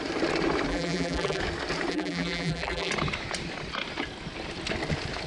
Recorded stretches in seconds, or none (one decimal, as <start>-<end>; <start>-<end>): 0.0-0.7; 1.4-1.9; 2.9-5.3